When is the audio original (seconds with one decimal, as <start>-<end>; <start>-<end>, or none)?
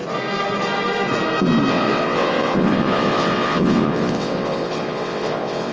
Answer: 0.0-1.7